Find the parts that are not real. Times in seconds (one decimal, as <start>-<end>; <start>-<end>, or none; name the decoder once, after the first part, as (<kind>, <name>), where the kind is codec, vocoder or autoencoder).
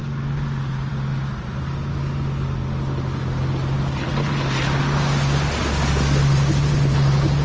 none